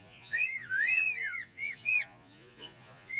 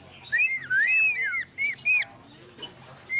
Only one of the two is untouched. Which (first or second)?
second